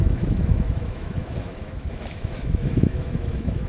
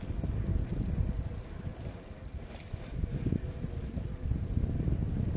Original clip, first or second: second